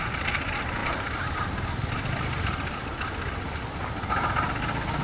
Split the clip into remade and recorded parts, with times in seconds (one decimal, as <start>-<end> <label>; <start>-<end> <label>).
0.0-0.8 recorded; 0.8-1.3 remade; 1.3-5.0 recorded